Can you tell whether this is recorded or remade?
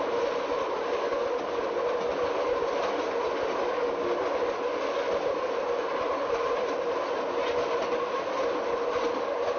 recorded